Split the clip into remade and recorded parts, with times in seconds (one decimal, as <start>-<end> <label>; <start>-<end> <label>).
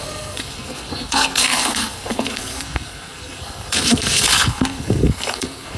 0.0-5.8 remade